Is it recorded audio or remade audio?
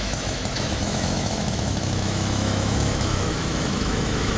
remade